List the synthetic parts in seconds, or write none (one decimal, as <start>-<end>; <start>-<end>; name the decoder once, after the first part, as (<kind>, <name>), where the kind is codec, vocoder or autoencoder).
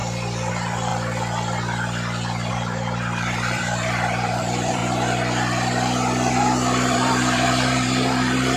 0.5-0.9 (vocoder, BigVGAN v2); 2.5-4.8; 6.3-8.6